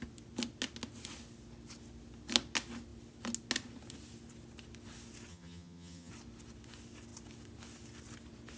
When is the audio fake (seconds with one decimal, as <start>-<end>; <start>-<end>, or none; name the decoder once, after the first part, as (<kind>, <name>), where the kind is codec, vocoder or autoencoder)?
5.3-6.1 (vocoder, HiFi-GAN)